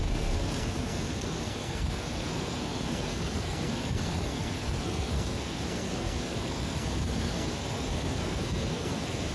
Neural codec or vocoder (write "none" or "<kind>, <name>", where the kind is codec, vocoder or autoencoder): codec, SNAC